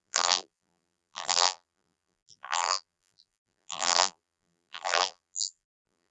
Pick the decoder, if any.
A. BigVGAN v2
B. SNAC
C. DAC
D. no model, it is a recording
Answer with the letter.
A